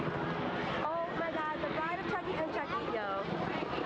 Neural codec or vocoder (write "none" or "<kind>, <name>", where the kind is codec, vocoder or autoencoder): none